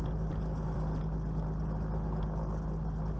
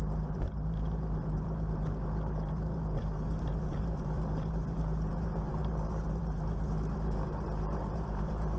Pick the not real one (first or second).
second